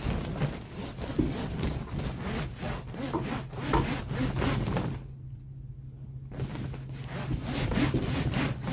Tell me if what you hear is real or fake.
real